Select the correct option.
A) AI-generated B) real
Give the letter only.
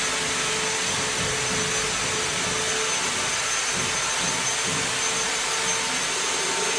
B